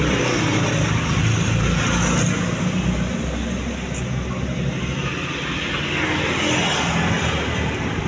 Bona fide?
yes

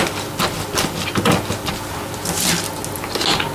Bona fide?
yes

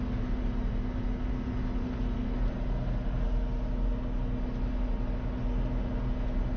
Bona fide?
yes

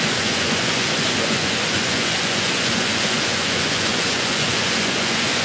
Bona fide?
no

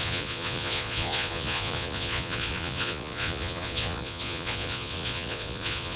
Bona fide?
no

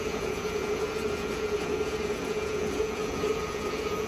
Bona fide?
no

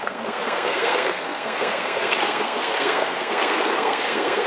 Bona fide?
no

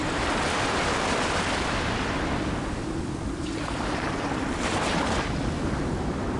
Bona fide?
yes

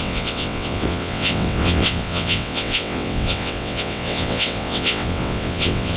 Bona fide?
no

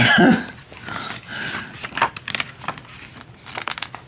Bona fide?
yes